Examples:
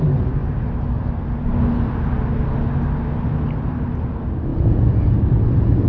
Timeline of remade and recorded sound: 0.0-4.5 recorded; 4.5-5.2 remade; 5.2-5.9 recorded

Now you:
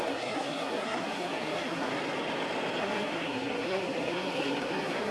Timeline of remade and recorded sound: 0.0-1.9 remade; 1.9-2.8 recorded; 2.8-5.1 remade

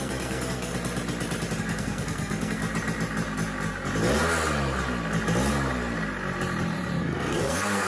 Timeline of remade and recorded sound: 0.0-0.7 remade; 0.7-1.6 recorded; 1.6-2.6 remade; 2.6-7.0 recorded; 7.0-7.9 remade

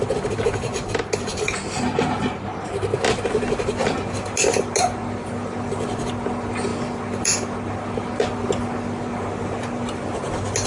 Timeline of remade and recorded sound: 0.0-10.7 recorded

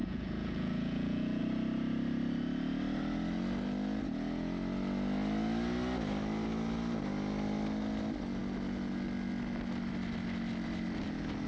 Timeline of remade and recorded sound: 0.0-1.4 remade; 1.4-11.5 recorded

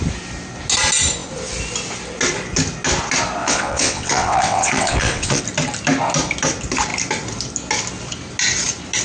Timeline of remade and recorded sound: 0.0-3.4 recorded; 3.4-5.4 remade; 5.4-9.0 recorded

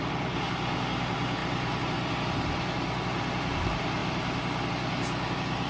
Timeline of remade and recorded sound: 0.0-5.7 recorded

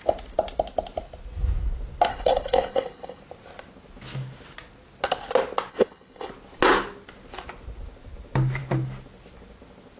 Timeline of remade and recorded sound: 0.0-2.1 recorded; 2.1-3.2 remade; 3.2-5.7 recorded; 5.7-6.3 remade; 6.3-10.0 recorded